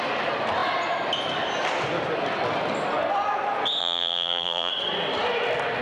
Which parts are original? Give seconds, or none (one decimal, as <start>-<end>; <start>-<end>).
0.0-3.8; 4.7-5.8